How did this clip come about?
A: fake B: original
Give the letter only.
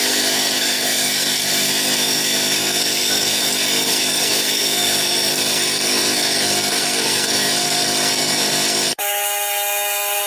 A